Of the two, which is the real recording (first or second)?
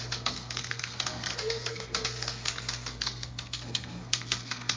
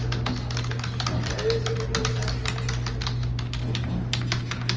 second